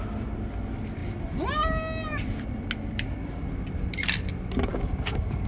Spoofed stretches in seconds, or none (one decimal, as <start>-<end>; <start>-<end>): 4.7-5.5